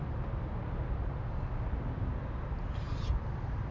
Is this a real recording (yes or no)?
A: yes